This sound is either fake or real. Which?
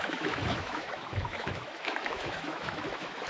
fake